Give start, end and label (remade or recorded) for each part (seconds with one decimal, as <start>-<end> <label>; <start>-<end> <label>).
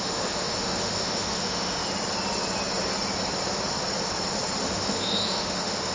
0.0-1.8 remade; 1.8-4.6 recorded; 4.6-5.9 remade